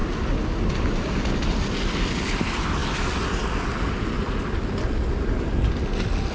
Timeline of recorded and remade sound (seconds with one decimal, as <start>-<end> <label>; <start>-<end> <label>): 0.0-6.3 recorded